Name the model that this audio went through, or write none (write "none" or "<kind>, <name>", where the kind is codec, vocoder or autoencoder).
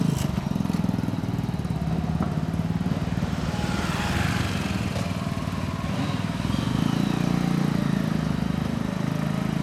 none